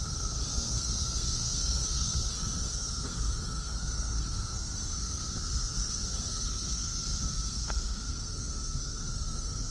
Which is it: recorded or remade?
remade